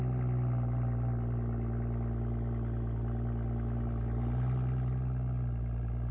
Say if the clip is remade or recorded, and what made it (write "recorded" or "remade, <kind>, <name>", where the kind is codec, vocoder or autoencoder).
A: recorded